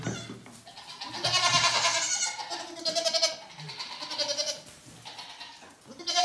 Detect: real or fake real